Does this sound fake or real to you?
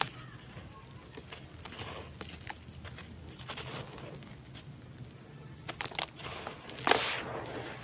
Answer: real